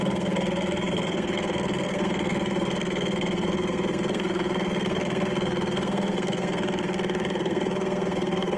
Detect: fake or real fake